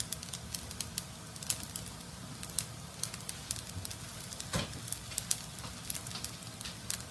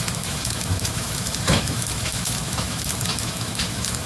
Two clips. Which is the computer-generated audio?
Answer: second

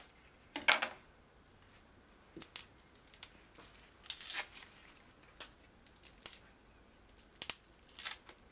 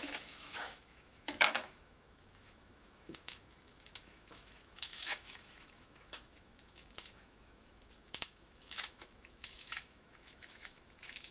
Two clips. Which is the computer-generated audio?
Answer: second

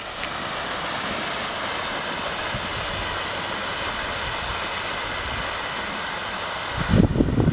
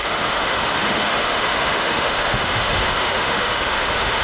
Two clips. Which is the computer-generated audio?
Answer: second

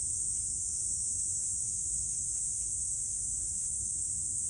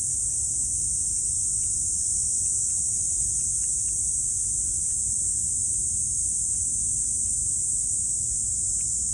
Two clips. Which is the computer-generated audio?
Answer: first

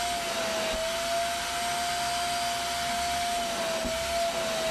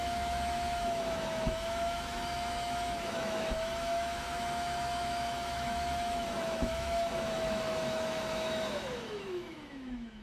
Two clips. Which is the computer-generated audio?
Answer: second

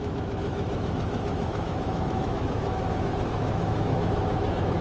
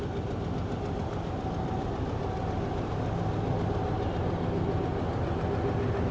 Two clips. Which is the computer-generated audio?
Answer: first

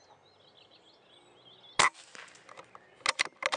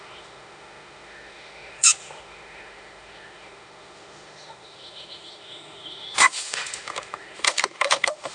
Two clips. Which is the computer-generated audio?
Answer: second